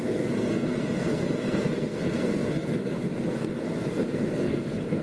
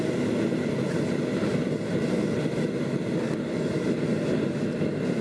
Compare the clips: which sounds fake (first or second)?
first